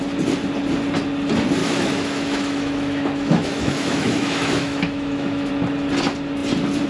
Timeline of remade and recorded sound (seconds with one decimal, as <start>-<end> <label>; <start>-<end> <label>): 0.0-1.6 recorded; 1.6-5.5 remade; 5.5-6.9 recorded